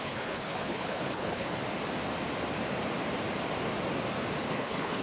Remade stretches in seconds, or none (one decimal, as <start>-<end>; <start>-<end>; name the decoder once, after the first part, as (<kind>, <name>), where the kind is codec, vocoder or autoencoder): 0.0-1.5 (codec, HILCodec); 4.5-5.0